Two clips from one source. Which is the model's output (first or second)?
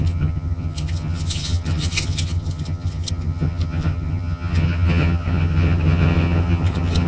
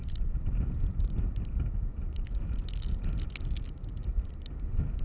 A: first